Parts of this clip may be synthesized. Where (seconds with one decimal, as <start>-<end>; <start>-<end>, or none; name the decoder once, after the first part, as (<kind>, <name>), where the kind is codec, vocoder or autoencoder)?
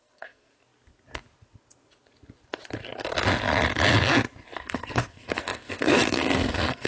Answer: 0.0-0.5 (codec, SNAC); 4.6-6.9